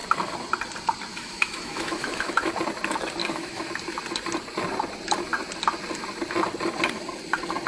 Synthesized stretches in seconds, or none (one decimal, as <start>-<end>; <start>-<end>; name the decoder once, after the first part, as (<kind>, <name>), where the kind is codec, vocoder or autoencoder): 1.1-2.5 (autoencoder, DAC-VAE); 3.2-3.7